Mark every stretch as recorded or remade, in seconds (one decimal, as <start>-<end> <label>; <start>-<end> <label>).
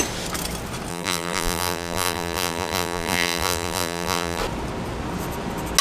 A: 0.0-0.9 recorded; 0.9-4.4 remade; 4.4-5.8 recorded